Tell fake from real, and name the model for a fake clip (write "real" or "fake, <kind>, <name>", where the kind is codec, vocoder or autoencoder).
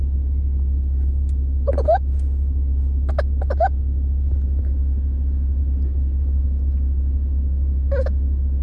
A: real